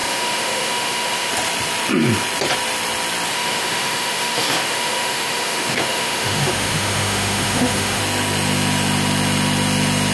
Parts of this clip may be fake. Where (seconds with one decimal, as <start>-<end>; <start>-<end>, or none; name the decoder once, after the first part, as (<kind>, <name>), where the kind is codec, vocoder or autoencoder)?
0.0-1.3 (autoencoder, DAC-VAE); 3.3-8.0